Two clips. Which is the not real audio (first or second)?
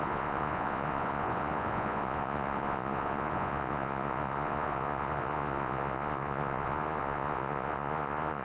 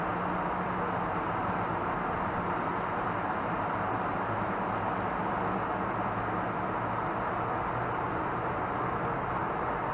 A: first